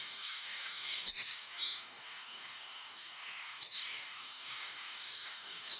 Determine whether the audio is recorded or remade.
remade